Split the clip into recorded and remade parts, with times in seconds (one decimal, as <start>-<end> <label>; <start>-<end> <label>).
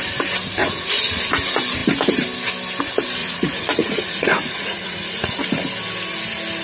0.0-0.6 recorded; 0.6-1.2 remade; 1.2-3.2 recorded; 3.2-5.4 remade; 5.4-6.6 recorded